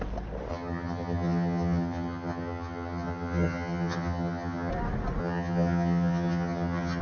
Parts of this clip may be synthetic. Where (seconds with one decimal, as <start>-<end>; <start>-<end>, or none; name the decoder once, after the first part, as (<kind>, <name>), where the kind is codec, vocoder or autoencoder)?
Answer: 0.5-4.7 (vocoder, HiFi-GAN); 5.2-7.0